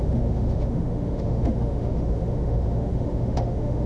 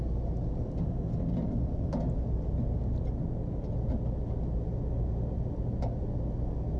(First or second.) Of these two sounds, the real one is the second